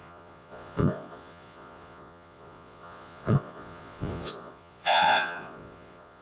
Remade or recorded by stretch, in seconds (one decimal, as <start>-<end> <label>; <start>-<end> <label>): 0.0-6.2 remade